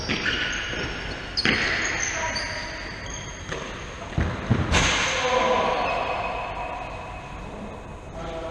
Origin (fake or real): real